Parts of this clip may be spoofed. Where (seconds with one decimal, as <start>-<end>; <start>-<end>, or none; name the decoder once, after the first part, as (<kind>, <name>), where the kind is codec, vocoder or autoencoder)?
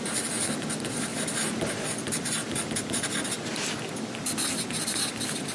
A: none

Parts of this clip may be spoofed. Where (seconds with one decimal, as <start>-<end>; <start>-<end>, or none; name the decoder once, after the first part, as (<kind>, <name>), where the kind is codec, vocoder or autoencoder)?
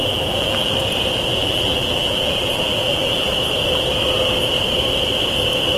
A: 0.0-0.7 (vocoder, BigVGAN v2); 1.3-3.3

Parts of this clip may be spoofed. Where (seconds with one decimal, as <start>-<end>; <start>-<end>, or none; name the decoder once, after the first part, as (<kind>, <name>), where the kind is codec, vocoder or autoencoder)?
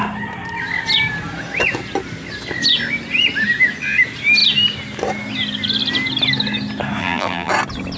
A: 7.0-7.5 (vocoder, BigVGAN v2)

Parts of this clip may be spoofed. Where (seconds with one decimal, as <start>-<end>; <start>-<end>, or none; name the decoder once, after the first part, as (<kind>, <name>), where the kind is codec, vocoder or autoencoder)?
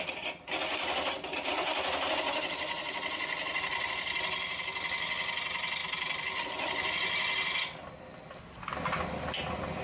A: 5.8-6.4 (vocoder, BigVGAN v2)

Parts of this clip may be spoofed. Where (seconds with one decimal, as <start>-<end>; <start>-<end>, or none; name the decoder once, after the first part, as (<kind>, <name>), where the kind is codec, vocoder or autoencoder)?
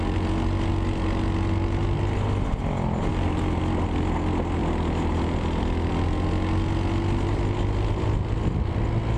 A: 3.1-3.6 (vocoder, BigVGAN v2)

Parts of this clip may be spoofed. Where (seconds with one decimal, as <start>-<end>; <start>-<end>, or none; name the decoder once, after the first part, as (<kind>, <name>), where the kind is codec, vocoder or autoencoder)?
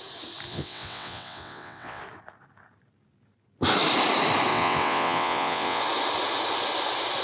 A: 0.5-2.0 (vocoder, WaveNeXt); 4.5-5.8